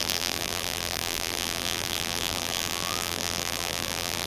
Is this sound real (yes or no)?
no